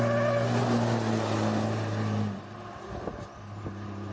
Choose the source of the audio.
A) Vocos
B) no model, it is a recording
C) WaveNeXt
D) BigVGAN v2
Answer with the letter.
B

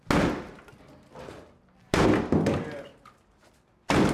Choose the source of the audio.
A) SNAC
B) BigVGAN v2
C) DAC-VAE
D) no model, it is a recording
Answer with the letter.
D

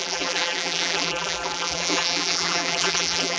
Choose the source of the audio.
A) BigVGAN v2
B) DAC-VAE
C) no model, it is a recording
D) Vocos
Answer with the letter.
A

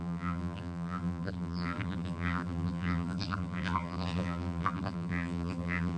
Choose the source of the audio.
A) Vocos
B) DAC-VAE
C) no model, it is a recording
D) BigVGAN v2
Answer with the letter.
D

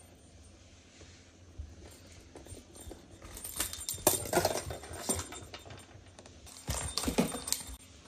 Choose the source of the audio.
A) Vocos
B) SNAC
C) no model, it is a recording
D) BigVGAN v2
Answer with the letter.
C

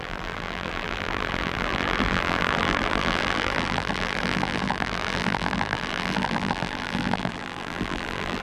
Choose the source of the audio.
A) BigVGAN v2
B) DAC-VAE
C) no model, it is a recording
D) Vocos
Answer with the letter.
A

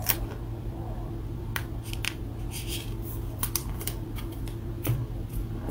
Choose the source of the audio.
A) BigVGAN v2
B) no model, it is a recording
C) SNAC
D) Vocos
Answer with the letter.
A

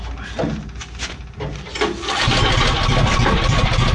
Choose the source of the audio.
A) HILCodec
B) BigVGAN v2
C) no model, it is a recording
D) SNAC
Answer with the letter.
B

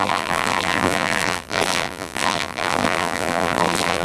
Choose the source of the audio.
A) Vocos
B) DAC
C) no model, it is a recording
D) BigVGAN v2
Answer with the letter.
D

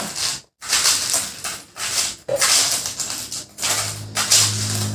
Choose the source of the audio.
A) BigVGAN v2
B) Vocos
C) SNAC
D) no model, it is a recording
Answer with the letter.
D